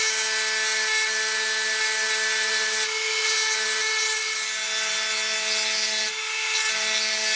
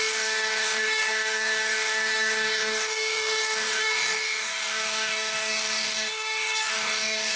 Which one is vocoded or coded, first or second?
second